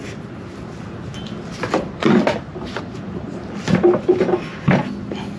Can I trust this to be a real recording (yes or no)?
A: yes